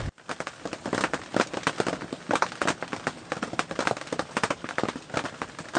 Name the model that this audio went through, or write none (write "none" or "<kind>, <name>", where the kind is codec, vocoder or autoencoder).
none